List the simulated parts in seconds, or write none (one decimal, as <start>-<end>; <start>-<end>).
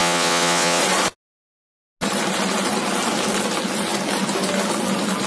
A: 0.0-0.8